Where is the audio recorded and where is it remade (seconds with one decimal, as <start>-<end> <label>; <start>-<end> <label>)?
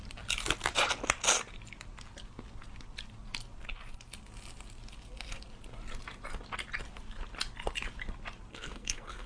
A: 0.0-8.5 recorded; 8.5-9.3 remade